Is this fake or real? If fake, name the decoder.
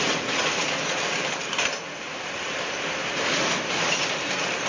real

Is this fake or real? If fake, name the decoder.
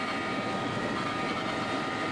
real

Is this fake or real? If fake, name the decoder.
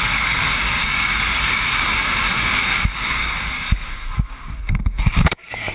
fake, codec, DAC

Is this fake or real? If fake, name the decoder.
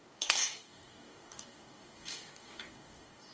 fake, codec, DAC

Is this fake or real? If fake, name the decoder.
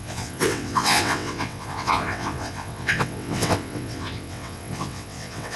fake, vocoder, WaveNeXt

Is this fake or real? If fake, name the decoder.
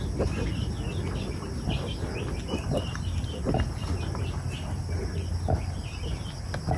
real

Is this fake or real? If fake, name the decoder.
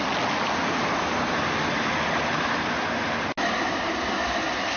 real